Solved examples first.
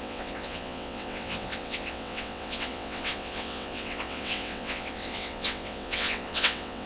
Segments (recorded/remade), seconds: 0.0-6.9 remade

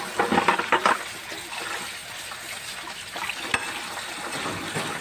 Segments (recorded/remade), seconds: 0.0-5.0 recorded

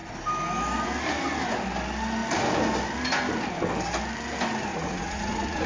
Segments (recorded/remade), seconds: 0.0-4.7 recorded; 4.7-5.7 remade

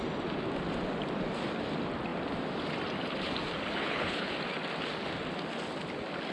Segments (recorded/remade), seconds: 0.0-3.8 recorded; 3.8-4.3 remade; 4.3-6.3 recorded

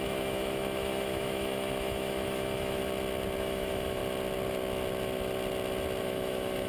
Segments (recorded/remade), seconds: 0.0-2.8 remade; 2.8-3.4 recorded; 3.4-4.0 remade; 4.0-6.0 recorded; 6.0-6.7 remade

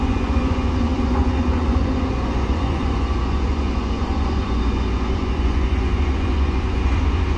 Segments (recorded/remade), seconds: 0.0-7.4 remade